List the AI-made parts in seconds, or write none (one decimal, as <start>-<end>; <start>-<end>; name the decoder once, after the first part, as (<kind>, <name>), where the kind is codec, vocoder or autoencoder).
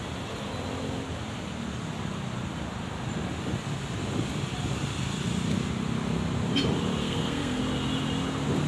7.0-7.6 (codec, SNAC)